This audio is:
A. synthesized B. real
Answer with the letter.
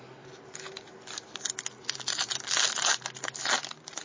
B